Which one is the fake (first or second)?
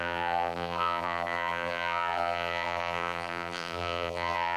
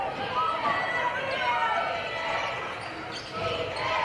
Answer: first